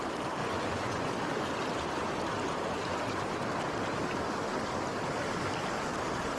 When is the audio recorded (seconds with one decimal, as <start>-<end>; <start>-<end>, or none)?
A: 0.0-0.4; 1.1-6.4